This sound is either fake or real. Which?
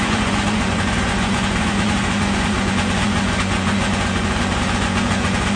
fake